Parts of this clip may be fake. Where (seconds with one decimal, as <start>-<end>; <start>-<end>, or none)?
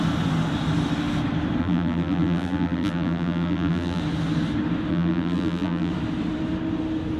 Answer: 1.6-4.0; 4.9-5.9